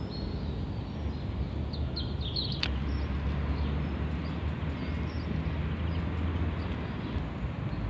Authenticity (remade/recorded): recorded